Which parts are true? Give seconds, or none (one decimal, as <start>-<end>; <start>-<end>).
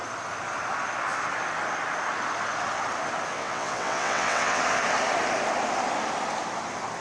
0.0-3.3; 4.6-7.0